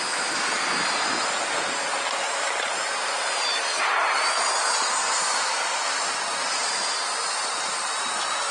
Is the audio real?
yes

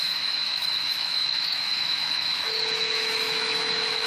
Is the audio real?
no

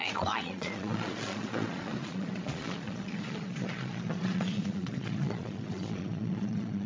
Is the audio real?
no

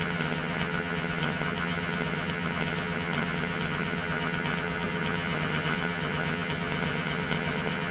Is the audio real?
no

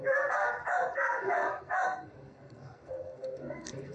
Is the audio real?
no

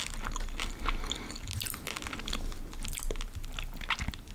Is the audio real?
yes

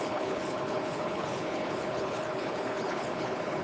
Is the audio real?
no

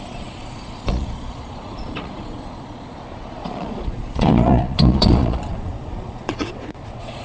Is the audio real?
no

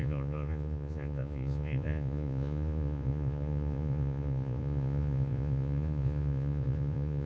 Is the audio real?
no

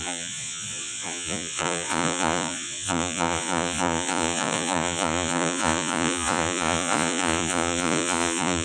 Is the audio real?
no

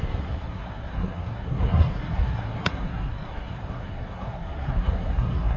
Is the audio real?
no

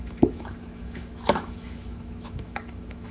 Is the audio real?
no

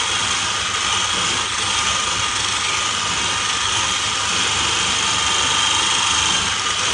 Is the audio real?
yes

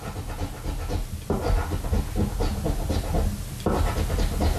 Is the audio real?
yes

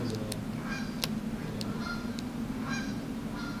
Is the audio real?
yes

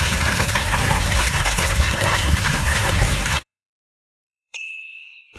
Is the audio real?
no